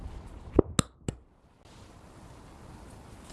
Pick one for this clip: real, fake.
real